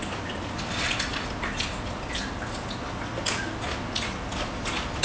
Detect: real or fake real